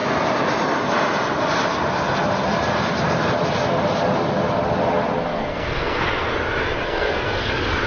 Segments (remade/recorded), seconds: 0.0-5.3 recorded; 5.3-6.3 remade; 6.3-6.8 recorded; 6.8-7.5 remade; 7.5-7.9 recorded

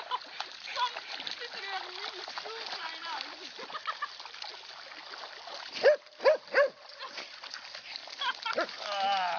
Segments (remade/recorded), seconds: 0.0-9.4 recorded

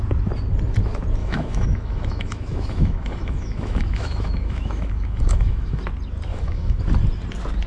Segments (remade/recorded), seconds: 0.0-1.2 recorded; 1.2-5.8 remade; 5.8-6.3 recorded; 6.3-6.8 remade; 6.8-7.7 recorded

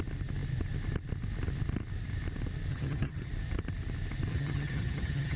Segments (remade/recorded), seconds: 0.0-2.7 recorded; 2.7-3.3 remade; 3.3-4.3 recorded; 4.3-5.4 remade

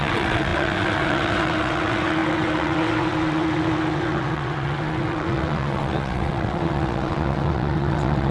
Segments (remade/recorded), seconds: 0.0-8.3 remade